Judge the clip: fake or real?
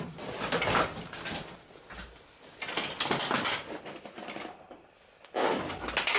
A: real